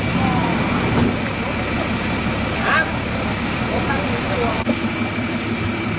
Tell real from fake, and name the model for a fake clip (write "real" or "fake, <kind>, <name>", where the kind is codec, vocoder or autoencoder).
real